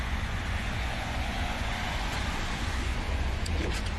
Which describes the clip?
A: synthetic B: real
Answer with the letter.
A